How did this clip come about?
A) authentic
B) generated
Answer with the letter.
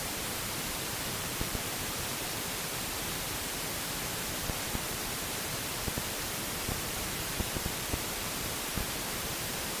B